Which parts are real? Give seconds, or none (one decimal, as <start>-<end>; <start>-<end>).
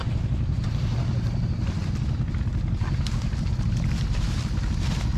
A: 0.0-5.2